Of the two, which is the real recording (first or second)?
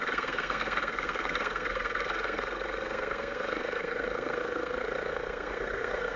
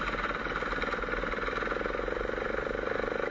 second